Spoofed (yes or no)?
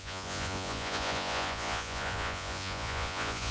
yes